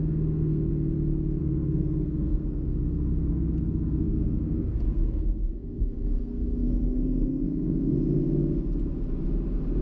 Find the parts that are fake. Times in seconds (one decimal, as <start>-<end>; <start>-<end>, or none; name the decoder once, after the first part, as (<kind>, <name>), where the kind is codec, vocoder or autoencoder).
0.0-0.7 (codec, SNAC); 1.4-7.9